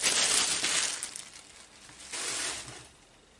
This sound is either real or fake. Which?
real